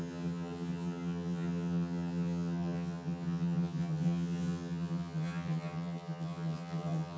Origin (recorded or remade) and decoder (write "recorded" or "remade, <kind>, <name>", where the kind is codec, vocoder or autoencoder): remade, vocoder, HiFi-GAN